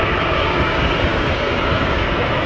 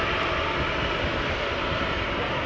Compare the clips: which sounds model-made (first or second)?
first